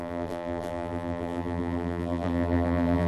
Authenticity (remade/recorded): remade